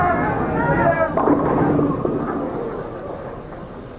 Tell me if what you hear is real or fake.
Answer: real